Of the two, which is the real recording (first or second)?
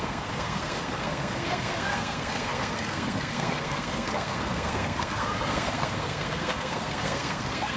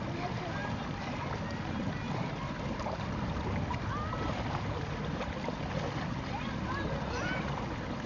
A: second